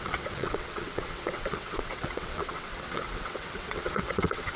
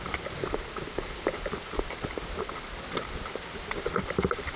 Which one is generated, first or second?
first